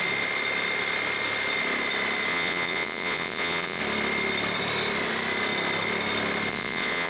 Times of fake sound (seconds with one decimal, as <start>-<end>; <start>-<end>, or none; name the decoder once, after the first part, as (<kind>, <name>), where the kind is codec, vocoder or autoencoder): 2.3-3.8 (vocoder, Vocos); 6.5-7.1